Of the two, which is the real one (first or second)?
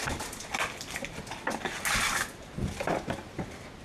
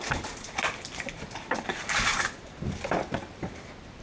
first